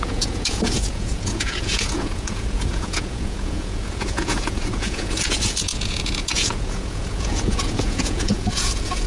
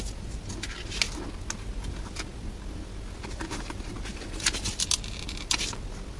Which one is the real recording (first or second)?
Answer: second